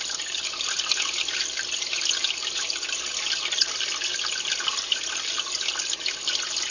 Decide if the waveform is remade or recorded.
recorded